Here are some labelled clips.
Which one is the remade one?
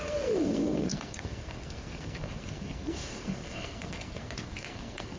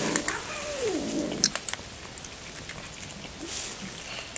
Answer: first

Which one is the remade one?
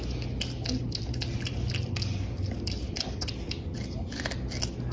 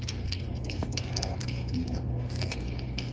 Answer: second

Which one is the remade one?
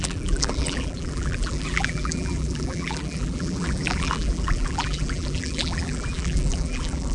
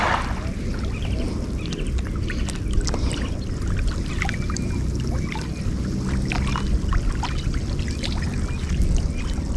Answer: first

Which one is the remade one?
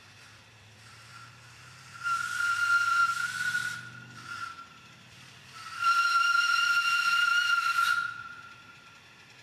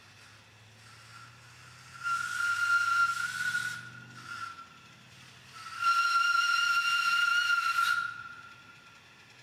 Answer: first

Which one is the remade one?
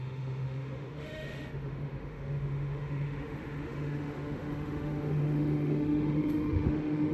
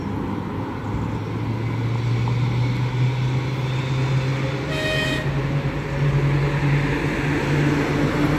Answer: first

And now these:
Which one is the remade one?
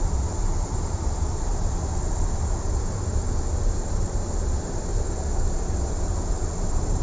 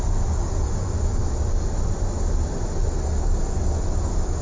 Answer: first